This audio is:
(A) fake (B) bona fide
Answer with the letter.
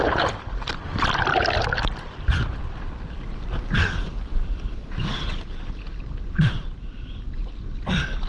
A